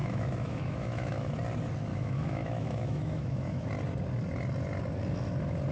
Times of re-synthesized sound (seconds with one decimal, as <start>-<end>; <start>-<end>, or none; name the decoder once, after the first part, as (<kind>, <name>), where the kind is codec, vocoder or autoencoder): 0.0-1.4 (autoencoder, DAC-VAE); 1.9-3.7